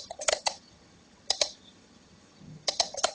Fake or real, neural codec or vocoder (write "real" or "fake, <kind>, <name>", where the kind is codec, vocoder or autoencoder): fake, vocoder, HiFi-GAN